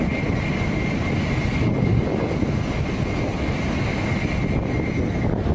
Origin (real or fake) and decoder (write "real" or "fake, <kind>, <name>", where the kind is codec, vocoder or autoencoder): real